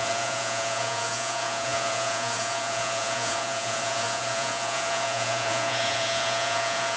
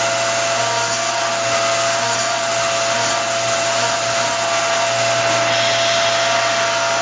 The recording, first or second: second